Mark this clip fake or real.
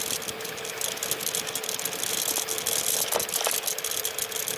real